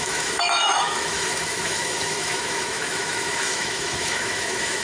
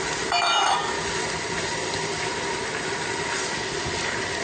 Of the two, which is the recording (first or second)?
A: second